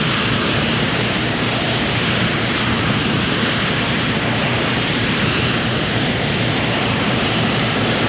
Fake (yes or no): yes